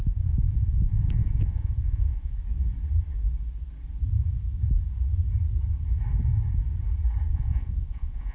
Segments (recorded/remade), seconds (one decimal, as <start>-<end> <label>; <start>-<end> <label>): 0.0-2.4 remade; 2.4-7.3 recorded; 7.3-8.3 remade